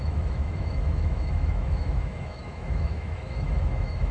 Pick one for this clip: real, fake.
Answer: fake